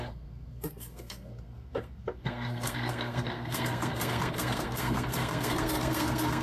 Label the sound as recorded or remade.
remade